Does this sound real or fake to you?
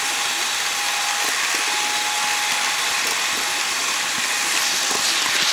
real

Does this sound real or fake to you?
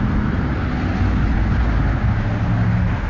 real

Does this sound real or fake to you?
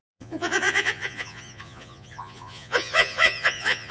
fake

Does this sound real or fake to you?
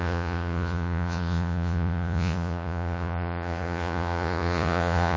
fake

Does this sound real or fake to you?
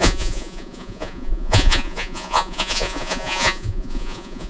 fake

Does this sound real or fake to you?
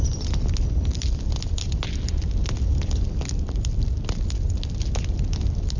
real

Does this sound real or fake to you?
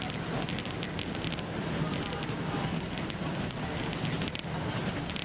real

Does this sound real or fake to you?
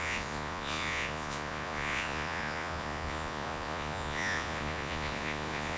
fake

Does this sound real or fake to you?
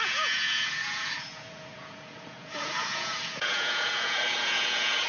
fake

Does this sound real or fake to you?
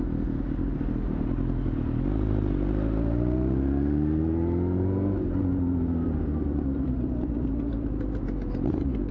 real